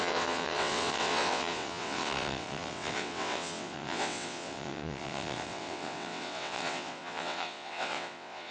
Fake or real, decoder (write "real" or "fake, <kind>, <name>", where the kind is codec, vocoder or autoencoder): fake, vocoder, WaveNeXt